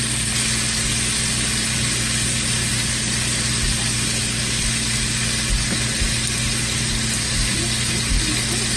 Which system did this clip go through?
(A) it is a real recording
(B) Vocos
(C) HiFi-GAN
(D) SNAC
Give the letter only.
A